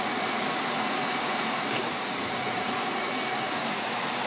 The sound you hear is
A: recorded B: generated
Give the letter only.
B